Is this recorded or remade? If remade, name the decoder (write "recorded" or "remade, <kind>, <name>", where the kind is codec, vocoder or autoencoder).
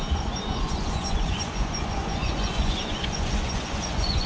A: remade, vocoder, Vocos